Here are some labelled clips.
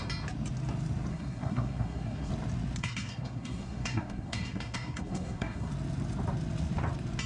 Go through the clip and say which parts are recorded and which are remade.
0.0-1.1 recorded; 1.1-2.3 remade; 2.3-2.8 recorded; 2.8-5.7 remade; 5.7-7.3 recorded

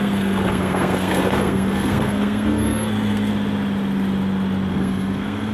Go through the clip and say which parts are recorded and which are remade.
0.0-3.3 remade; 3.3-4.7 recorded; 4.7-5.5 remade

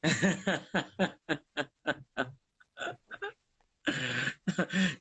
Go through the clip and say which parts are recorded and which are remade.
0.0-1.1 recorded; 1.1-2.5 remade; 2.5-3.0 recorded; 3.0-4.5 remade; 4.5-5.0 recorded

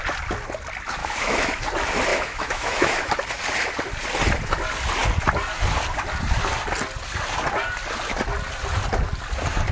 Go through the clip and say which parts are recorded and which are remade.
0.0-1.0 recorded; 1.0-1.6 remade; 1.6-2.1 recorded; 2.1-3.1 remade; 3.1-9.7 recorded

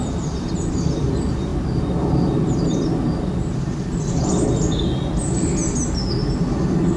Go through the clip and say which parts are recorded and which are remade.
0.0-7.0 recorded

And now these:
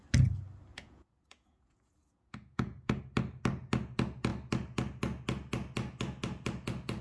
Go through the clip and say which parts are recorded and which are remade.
0.0-0.7 recorded; 0.7-3.0 remade; 3.0-7.0 recorded

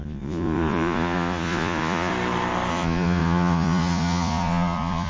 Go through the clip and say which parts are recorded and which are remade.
0.0-2.1 remade; 2.1-2.7 recorded; 2.7-5.1 remade

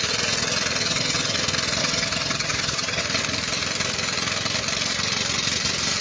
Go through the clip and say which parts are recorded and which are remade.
0.0-0.8 recorded; 0.8-1.4 remade; 1.4-1.8 recorded; 1.8-3.0 remade; 3.0-6.0 recorded